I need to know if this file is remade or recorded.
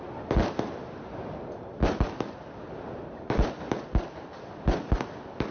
recorded